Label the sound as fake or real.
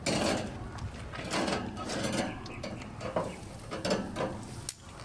real